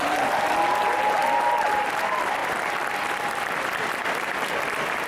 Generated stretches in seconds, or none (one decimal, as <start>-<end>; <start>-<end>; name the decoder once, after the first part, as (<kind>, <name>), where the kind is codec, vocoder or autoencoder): 2.4-4.0 (vocoder, BigVGAN v2)